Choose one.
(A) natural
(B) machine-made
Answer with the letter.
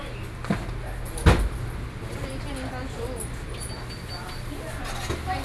A